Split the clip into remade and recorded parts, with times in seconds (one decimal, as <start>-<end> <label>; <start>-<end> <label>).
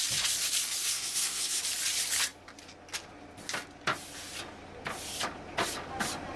0.0-0.8 recorded; 0.8-1.6 remade; 1.6-6.4 recorded